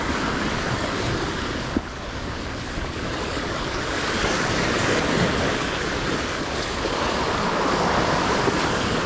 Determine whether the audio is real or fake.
fake